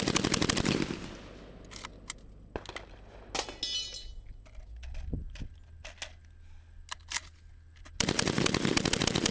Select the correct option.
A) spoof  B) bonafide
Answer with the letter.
B